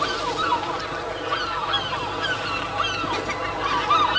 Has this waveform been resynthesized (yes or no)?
no